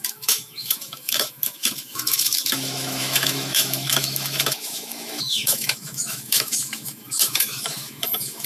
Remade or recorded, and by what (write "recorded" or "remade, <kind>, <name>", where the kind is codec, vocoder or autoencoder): remade, autoencoder, DAC-VAE